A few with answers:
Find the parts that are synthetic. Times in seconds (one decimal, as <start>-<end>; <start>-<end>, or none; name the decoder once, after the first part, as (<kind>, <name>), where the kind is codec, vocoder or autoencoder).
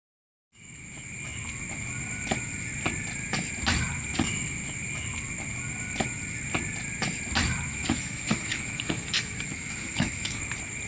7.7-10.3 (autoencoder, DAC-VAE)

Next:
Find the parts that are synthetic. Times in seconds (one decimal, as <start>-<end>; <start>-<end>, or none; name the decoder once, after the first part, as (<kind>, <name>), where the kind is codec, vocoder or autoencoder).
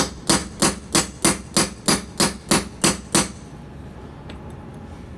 none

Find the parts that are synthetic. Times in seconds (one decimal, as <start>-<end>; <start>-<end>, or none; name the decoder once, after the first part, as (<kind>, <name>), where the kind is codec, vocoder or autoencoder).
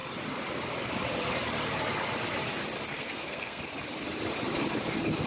2.9-3.6 (codec, SNAC)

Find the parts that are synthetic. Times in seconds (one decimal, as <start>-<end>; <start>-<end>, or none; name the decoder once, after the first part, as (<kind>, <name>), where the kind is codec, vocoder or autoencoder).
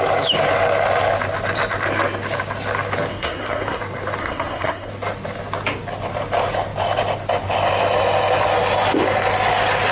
3.1-3.8 (codec, SNAC); 4.2-4.9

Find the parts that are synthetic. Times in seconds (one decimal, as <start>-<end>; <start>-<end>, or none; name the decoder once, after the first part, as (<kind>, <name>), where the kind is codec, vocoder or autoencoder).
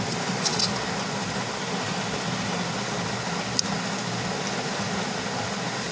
none